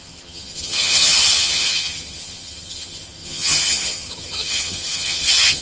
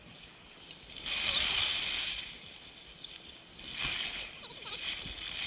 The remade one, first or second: first